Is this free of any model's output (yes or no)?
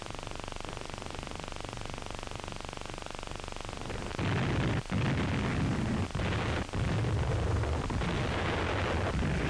yes